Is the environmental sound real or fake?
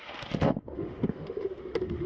fake